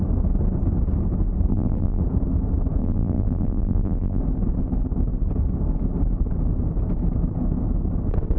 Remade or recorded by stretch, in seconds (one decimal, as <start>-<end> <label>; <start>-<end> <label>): 0.0-1.5 recorded; 1.5-2.0 remade; 2.0-2.8 recorded; 2.8-4.2 remade; 4.2-8.4 recorded

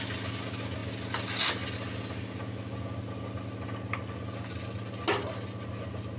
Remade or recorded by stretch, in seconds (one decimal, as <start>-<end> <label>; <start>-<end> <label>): 0.0-6.2 recorded

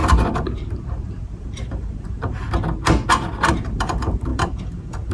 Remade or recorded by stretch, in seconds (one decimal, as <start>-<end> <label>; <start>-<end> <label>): 0.0-1.0 recorded; 1.0-2.4 remade; 2.4-3.4 recorded; 3.4-5.1 remade

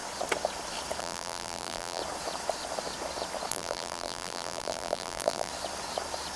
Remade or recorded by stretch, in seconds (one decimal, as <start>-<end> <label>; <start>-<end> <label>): 0.0-1.0 recorded; 1.0-2.0 remade; 2.0-3.5 recorded; 3.5-5.5 remade; 5.5-6.4 recorded

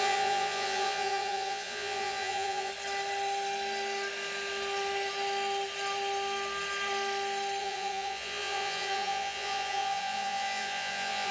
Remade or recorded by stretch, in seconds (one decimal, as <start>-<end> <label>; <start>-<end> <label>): 0.0-2.7 remade; 2.7-7.6 recorded; 7.6-11.3 remade

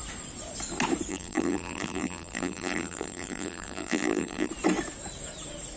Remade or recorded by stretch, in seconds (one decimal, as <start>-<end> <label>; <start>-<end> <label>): 0.0-1.1 recorded; 1.1-4.5 remade; 4.5-5.8 recorded

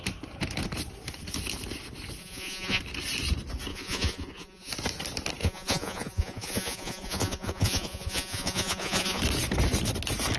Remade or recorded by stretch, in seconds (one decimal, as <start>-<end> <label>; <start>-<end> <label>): 0.0-2.2 recorded; 2.2-2.8 remade; 2.8-3.7 recorded; 3.7-4.7 remade; 4.7-5.4 recorded; 5.4-9.2 remade; 9.2-10.4 recorded

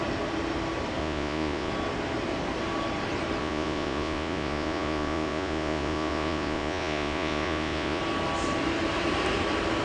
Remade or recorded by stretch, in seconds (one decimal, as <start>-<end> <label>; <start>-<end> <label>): 0.0-1.0 recorded; 1.0-1.7 remade; 1.7-3.4 recorded; 3.4-8.0 remade; 8.0-9.8 recorded